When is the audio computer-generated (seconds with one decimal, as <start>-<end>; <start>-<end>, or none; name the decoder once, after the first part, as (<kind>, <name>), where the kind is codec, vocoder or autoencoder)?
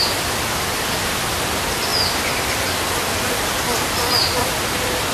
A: none